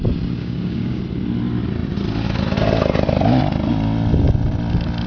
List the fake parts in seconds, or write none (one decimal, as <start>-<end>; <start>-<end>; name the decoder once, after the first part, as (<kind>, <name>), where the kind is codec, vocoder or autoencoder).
0.4-1.0 (codec, DAC)